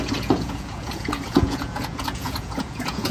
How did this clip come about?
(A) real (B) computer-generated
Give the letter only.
B